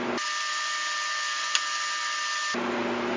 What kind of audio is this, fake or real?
real